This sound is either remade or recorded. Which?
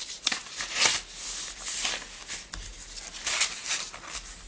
recorded